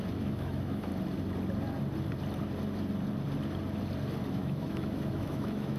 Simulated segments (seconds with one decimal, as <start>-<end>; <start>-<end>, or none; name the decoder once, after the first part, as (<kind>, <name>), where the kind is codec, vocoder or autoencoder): 0.0-0.9 (autoencoder, DAC-VAE); 4.3-5.8